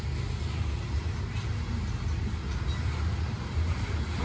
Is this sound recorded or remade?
recorded